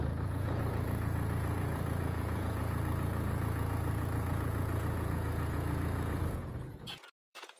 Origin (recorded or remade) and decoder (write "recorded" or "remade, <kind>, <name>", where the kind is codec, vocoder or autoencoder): remade, vocoder, Vocos